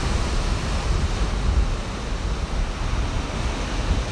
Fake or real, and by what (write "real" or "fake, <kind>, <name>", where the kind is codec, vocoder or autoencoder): real